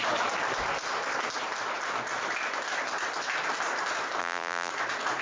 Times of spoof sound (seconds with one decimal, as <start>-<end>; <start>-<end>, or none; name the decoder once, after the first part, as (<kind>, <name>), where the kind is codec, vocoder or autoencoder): 4.2-4.7 (vocoder, BigVGAN v2)